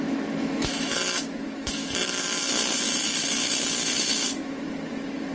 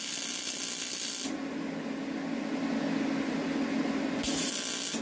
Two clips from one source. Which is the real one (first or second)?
second